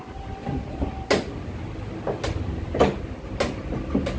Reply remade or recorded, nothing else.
recorded